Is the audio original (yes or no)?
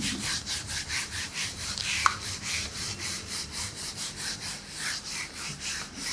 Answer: no